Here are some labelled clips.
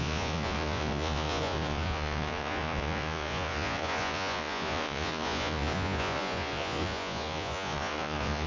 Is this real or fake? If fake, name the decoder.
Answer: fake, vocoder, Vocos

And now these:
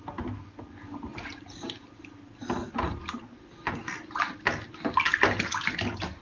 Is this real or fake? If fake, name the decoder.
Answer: real